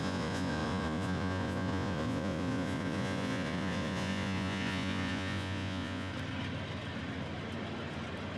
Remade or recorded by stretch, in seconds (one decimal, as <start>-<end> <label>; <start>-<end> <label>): 0.0-6.1 remade; 6.1-8.4 recorded